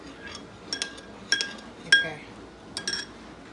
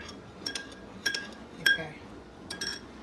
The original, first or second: first